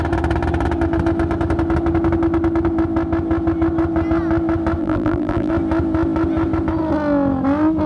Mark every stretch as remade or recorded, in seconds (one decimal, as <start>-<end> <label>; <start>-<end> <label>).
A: 0.0-4.8 recorded; 4.8-5.5 remade; 5.5-7.9 recorded